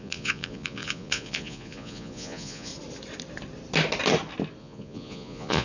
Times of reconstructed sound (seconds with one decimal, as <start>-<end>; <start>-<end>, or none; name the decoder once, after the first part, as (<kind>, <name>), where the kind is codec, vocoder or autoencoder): 0.0-2.7 (vocoder, Vocos); 4.6-5.6